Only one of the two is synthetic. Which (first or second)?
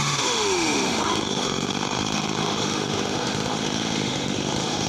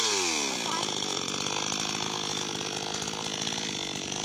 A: first